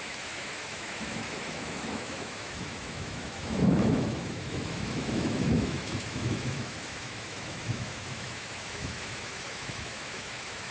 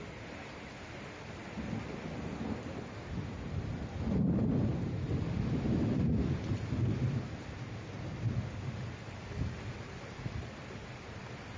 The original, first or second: second